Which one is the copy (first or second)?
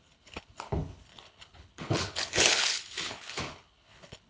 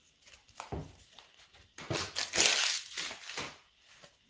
first